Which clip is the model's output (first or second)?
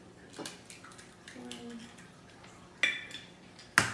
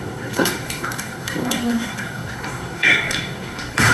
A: second